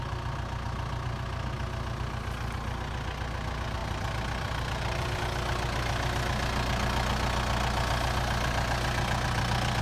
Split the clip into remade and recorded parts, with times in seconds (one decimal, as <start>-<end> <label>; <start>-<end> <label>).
0.0-3.8 recorded; 3.8-5.2 remade; 5.2-9.8 recorded